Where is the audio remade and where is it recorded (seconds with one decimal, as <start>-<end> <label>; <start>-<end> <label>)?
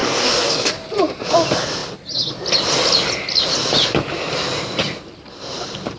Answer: 0.0-0.7 remade; 0.7-6.0 recorded